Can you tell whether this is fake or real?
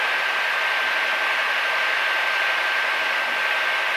real